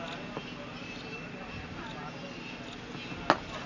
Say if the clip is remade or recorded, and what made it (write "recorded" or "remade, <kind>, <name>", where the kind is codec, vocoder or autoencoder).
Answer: recorded